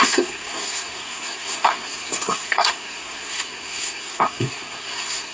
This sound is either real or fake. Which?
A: fake